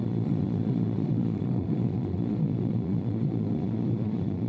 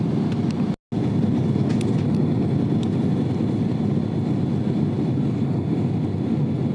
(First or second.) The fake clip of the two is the first